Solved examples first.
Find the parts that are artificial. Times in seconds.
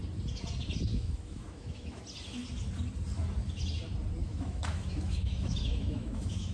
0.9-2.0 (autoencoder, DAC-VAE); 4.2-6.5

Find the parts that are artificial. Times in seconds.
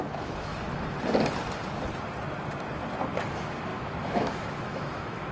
0.0-0.5 (autoencoder, DAC-VAE); 3.3-5.3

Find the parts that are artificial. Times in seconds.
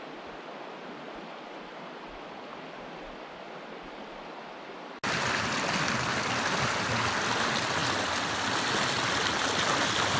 none